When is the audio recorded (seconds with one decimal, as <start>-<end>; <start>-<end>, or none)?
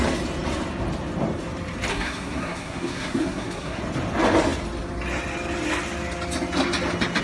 0.0-1.9; 3.8-7.2